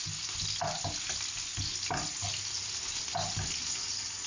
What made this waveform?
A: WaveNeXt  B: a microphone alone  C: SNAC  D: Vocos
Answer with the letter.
B